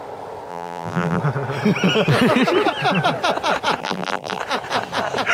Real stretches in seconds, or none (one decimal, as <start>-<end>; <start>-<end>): 0.0-0.5; 1.2-3.8; 4.4-5.3